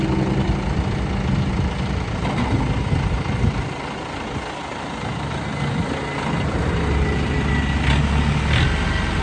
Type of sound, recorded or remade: recorded